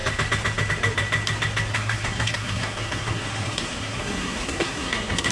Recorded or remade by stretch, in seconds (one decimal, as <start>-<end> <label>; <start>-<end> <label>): 0.0-1.7 recorded; 1.7-5.3 remade